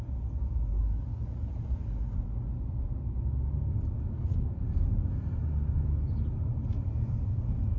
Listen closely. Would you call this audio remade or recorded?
recorded